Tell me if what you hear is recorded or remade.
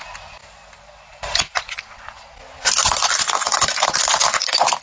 recorded